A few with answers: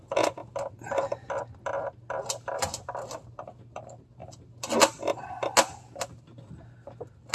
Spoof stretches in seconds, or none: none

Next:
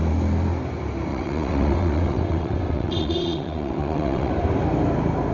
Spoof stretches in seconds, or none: 1.1-4.3 (vocoder, WaveNeXt)

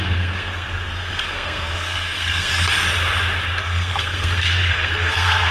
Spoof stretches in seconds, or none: 0.0-2.5 (codec, SNAC); 3.6-5.5